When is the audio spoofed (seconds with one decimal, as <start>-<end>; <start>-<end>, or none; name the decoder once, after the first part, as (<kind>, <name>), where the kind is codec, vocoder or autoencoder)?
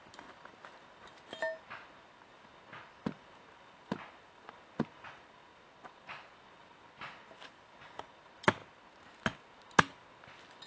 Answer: none